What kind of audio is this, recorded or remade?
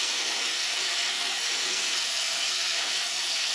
remade